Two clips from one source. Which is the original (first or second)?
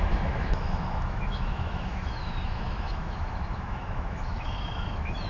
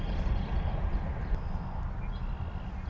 second